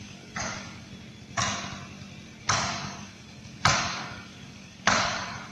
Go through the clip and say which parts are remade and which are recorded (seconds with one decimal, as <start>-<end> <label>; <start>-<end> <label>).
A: 0.0-0.9 remade; 0.9-2.4 recorded; 2.4-5.5 remade

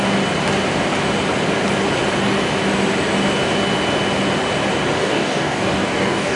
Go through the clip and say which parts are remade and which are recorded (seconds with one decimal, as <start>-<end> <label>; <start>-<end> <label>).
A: 0.0-5.0 recorded; 5.0-6.4 remade

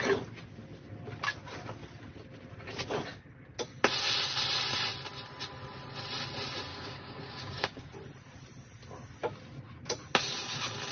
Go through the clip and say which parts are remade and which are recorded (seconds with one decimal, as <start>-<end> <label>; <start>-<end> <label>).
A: 0.0-6.7 recorded; 6.7-7.9 remade; 7.9-10.9 recorded